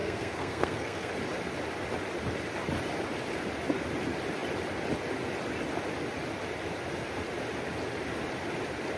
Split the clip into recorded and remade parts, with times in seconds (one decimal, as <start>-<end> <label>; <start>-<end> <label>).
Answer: 0.0-1.1 remade; 1.1-9.0 recorded